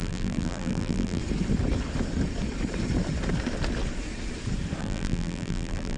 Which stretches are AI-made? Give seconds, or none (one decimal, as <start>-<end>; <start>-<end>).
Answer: 0.0-1.2; 4.8-6.0